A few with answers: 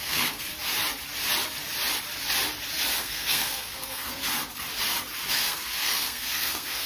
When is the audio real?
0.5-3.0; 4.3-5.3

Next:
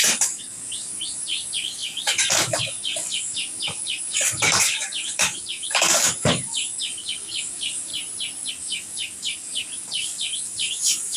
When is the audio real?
7.9-8.5

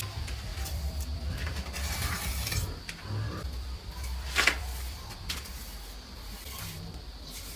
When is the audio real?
none

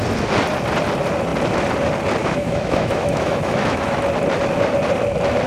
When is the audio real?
0.0-2.2; 4.0-5.5